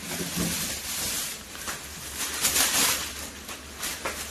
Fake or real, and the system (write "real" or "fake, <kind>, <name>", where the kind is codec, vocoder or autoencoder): real